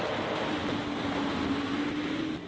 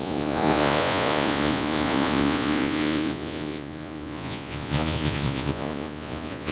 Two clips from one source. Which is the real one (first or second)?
first